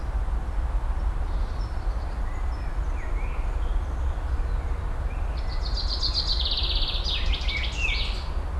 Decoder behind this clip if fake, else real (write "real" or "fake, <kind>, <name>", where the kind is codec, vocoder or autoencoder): real